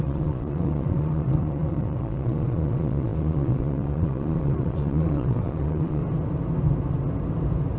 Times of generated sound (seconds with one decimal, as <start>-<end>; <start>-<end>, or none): 0.0-6.0